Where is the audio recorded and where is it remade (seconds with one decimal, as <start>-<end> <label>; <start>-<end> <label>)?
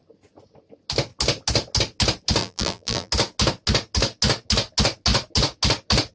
0.0-2.4 recorded; 2.4-3.1 remade; 3.1-6.1 recorded